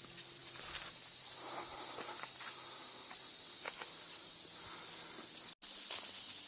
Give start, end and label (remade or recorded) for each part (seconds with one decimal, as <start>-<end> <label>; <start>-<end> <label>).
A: 0.0-6.5 recorded